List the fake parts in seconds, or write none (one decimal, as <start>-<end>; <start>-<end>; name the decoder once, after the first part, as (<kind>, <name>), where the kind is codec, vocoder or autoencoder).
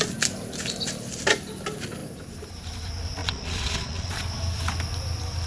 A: 3.2-4.1 (vocoder, Vocos)